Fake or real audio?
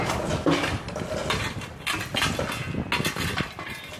real